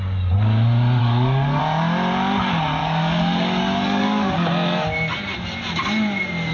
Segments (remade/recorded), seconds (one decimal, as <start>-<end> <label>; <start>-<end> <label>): 0.0-1.0 recorded; 1.0-1.6 remade; 1.6-2.8 recorded; 2.8-4.3 remade; 4.3-6.5 recorded